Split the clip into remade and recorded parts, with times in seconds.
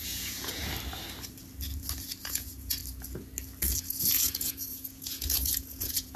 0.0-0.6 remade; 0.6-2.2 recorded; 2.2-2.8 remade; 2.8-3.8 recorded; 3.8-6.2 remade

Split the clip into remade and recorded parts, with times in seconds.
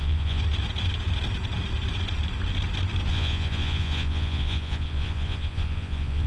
0.0-0.4 remade; 0.4-3.1 recorded; 3.1-6.3 remade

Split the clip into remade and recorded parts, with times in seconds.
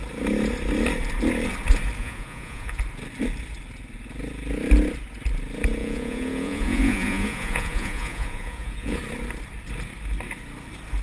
0.0-2.0 recorded; 2.0-2.8 remade; 2.8-5.8 recorded; 5.8-9.0 remade; 9.0-11.0 recorded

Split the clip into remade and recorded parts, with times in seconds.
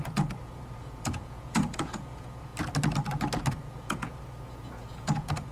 0.0-2.5 remade; 2.5-3.5 recorded; 3.5-5.5 remade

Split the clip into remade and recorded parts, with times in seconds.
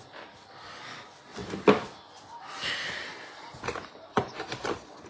0.0-5.1 recorded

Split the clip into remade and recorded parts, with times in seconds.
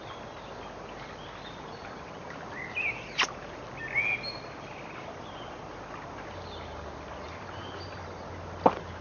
0.0-9.0 recorded